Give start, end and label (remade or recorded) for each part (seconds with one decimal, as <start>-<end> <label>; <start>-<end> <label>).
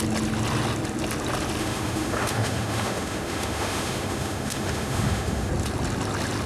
0.0-1.6 recorded; 1.6-5.5 remade; 5.5-6.5 recorded